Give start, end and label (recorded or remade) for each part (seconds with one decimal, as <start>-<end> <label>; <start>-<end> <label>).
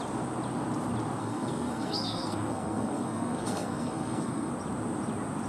0.0-1.2 recorded; 1.2-4.5 remade; 4.5-5.5 recorded